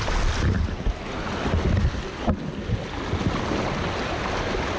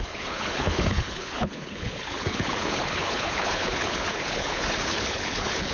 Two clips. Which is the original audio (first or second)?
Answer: first